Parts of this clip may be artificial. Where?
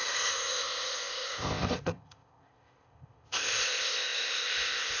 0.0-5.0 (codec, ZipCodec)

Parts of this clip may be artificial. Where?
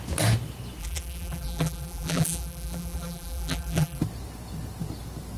0.8-4.0 (vocoder, BigVGAN v2)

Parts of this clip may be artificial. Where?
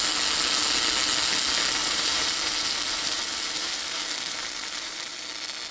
1.8-5.2 (vocoder, BigVGAN v2)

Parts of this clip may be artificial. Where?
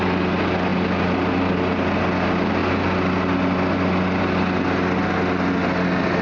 none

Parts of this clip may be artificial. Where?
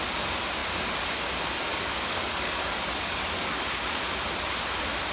1.7-4.0 (codec, DAC)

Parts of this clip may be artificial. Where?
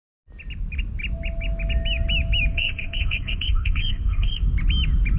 2.5-4.4 (codec, ZipCodec)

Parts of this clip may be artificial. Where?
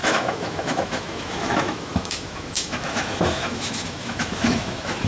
0.0-5.1 (autoencoder, DAC-VAE)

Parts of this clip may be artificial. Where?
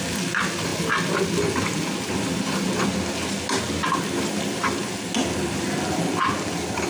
none